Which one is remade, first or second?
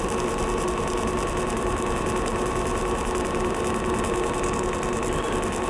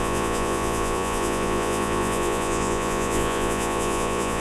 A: second